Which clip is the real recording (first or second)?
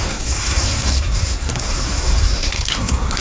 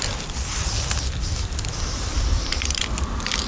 second